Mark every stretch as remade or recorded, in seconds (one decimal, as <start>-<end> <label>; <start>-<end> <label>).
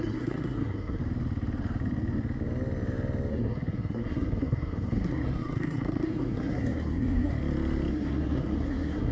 0.0-1.0 remade; 1.0-3.3 recorded; 3.3-7.3 remade; 7.3-7.9 recorded; 7.9-9.1 remade